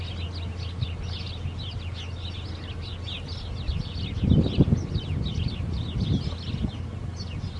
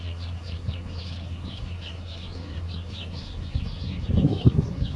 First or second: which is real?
first